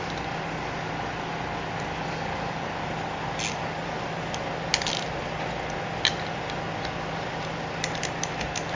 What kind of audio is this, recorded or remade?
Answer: recorded